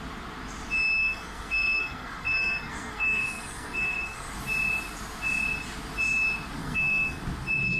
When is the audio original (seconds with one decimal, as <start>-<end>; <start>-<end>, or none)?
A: 0.0-1.0; 4.3-6.6; 7.2-7.8